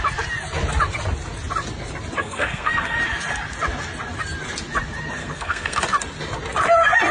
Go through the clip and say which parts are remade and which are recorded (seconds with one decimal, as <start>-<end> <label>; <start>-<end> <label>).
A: 0.0-2.2 recorded; 2.2-3.0 remade; 3.0-5.2 recorded; 5.2-5.8 remade; 5.8-7.1 recorded